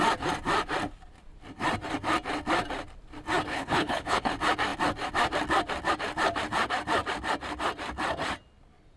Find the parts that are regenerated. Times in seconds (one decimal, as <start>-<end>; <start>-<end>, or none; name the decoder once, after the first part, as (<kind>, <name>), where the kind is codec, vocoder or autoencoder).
3.5-4.3 (codec, HILCodec)